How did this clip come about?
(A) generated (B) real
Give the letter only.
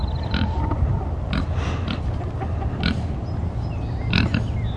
B